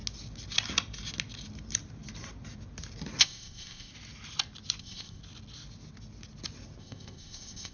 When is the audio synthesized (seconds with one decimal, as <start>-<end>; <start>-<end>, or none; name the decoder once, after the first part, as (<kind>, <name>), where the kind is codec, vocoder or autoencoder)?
3.2-3.9 (codec, ZipCodec); 4.8-5.2; 6.8-7.7